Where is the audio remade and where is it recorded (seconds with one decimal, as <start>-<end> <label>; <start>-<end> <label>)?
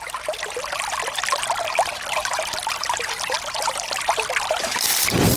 0.0-2.2 recorded; 2.2-5.4 remade